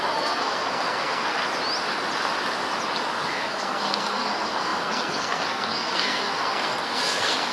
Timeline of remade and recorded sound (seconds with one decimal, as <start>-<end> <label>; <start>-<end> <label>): 0.0-1.4 remade; 1.4-3.3 recorded; 3.3-7.5 remade